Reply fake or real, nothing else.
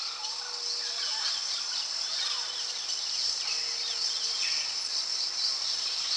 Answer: real